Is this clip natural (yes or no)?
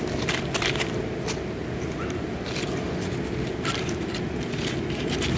yes